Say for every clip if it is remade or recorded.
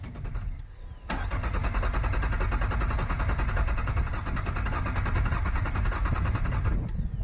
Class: recorded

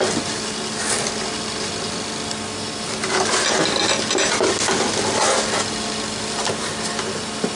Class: recorded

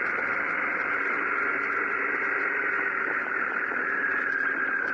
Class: remade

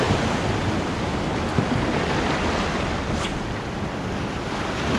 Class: recorded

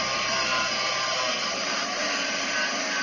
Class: remade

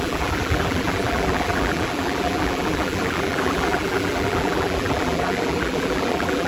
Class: remade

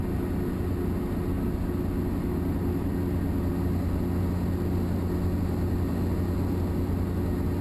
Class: recorded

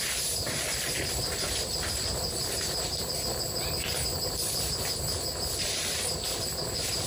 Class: recorded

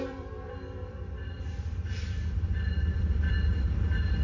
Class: remade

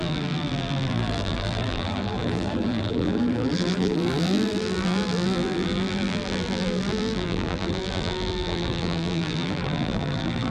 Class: remade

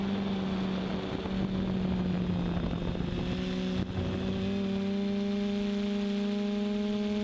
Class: recorded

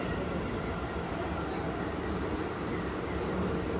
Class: recorded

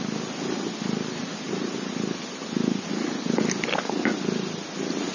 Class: recorded